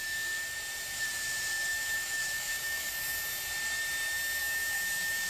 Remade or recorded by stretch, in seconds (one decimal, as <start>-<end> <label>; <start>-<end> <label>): 0.0-1.7 recorded; 1.7-2.9 remade; 2.9-4.4 recorded; 4.4-5.3 remade